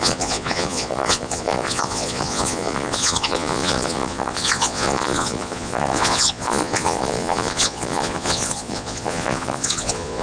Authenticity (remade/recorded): remade